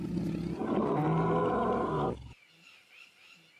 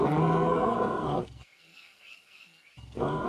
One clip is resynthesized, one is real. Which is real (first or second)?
first